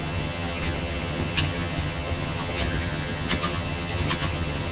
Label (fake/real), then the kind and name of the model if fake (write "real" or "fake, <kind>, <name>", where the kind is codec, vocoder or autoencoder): fake, vocoder, HiFi-GAN